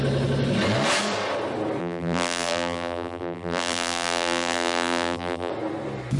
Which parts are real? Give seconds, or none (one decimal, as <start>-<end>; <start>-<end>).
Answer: 0.0-1.8; 5.5-6.2